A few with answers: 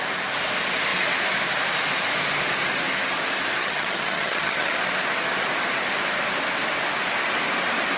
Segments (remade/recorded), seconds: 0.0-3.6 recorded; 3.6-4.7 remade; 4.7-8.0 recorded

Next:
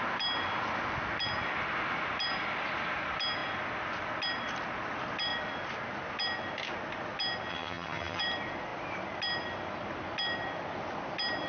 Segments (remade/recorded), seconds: 0.0-7.5 recorded; 7.5-8.2 remade; 8.2-11.5 recorded